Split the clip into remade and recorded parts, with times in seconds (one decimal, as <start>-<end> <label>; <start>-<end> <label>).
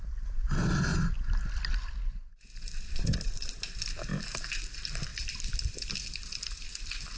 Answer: 0.0-0.9 recorded; 0.9-1.9 remade; 1.9-5.1 recorded; 5.1-5.9 remade; 5.9-7.2 recorded